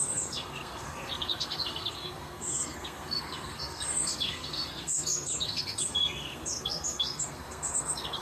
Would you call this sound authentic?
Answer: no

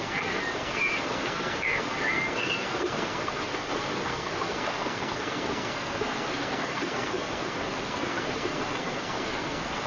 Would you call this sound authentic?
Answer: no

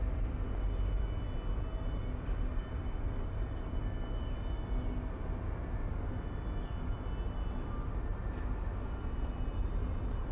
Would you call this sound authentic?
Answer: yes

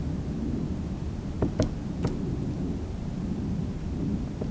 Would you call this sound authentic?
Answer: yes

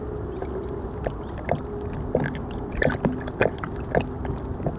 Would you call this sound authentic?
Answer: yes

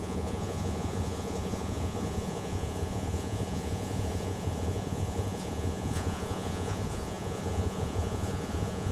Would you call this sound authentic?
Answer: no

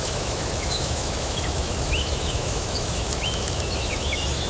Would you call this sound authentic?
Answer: no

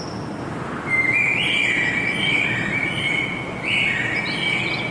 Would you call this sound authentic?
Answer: yes